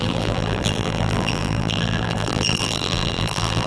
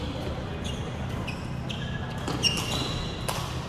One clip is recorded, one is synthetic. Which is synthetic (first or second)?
first